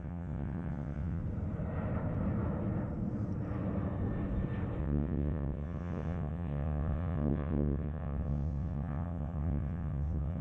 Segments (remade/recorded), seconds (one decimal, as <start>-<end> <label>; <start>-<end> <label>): 0.0-1.2 remade; 1.2-4.8 recorded; 4.8-10.4 remade